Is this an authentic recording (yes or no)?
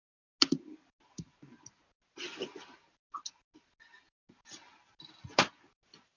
yes